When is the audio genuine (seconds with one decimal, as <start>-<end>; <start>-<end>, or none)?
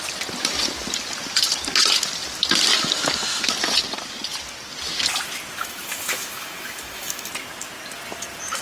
0.0-5.6; 7.3-8.6